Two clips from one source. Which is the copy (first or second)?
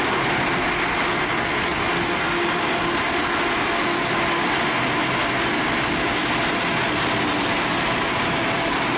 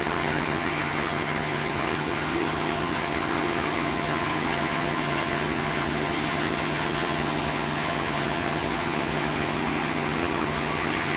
second